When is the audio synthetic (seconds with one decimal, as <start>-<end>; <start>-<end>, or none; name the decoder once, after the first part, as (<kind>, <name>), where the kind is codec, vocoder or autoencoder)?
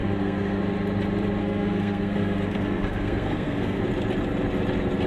0.0-0.6 (codec, SNAC); 1.4-3.8